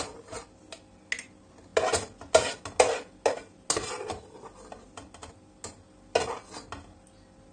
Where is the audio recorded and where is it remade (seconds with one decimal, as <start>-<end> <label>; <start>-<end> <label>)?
0.0-7.5 recorded